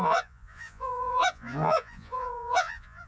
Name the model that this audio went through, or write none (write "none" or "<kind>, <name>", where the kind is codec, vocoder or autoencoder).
vocoder, Vocos